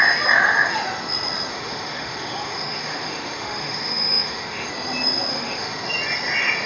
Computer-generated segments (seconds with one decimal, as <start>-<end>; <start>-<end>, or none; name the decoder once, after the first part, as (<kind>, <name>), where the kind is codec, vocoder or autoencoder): 1.5-4.7 (autoencoder, DAC-VAE); 5.3-5.9